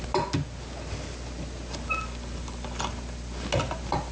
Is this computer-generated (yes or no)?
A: no